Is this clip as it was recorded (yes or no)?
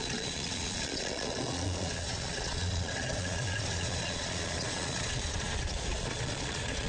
no